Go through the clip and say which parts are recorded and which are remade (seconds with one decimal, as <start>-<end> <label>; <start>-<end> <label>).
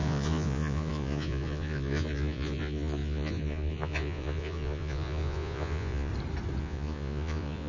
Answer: 0.0-6.1 remade; 6.1-6.6 recorded; 6.6-7.7 remade